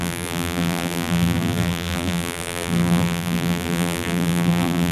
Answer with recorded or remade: remade